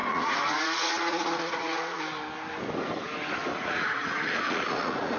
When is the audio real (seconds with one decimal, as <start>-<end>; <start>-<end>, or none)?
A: 2.0-3.5